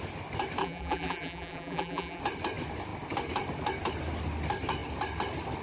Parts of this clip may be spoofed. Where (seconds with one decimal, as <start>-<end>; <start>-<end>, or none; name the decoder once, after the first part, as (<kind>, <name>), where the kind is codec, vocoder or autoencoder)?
0.6-2.2 (vocoder, BigVGAN v2)